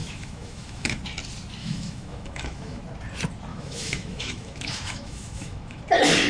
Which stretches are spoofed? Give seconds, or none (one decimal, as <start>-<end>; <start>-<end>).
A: 0.0-1.0; 1.6-2.8; 3.5-5.8